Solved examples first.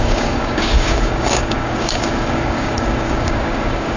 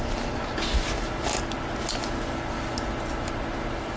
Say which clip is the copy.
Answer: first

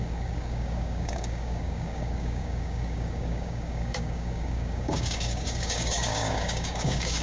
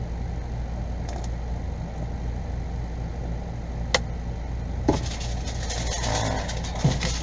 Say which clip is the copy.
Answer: first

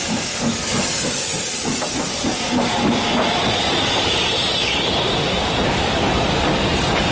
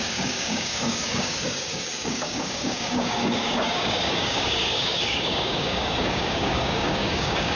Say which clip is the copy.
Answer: second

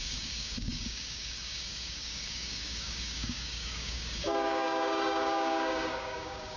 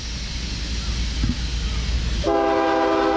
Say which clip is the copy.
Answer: first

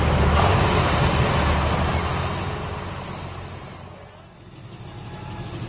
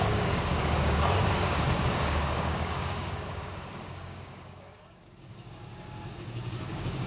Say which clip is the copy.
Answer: second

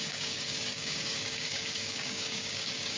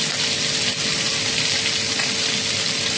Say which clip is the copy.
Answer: first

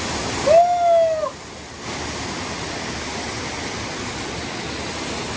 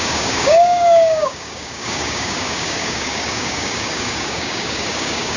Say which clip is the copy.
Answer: second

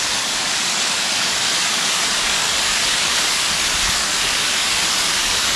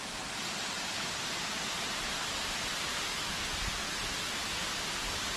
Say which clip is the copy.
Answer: first